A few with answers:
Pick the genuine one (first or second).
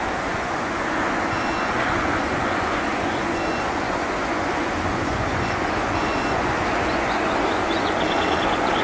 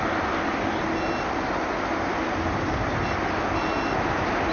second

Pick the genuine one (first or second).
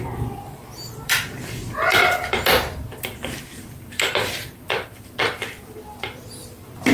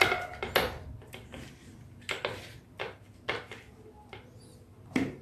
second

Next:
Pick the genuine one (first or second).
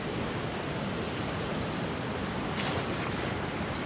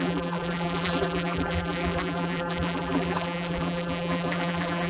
first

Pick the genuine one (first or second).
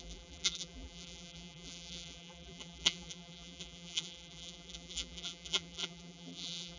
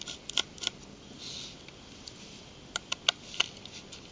second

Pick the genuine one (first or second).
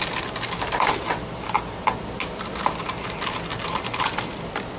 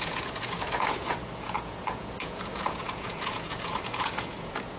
first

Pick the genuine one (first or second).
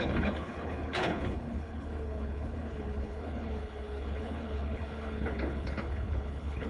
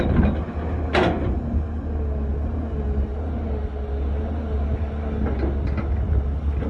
second